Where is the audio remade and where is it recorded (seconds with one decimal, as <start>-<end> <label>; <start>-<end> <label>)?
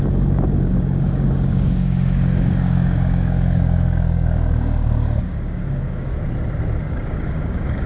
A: 0.0-6.1 remade; 6.1-6.8 recorded; 6.8-7.9 remade